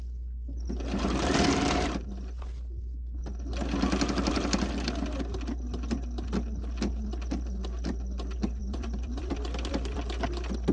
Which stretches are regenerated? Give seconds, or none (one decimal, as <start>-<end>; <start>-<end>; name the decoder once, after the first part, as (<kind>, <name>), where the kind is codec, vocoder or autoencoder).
8.6-10.0 (vocoder, BigVGAN v2)